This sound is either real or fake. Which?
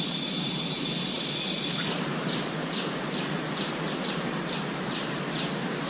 fake